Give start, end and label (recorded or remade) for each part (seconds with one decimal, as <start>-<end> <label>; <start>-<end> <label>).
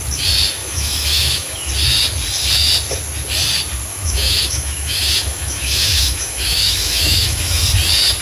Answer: 0.0-0.6 recorded; 0.6-1.7 remade; 1.7-3.9 recorded; 3.9-7.6 remade; 7.6-8.2 recorded